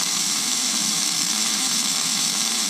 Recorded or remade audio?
remade